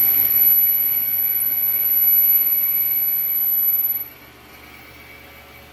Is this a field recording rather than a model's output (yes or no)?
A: yes